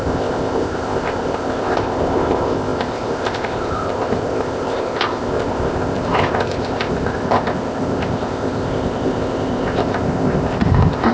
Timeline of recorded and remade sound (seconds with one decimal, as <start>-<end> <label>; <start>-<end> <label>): 0.0-11.1 remade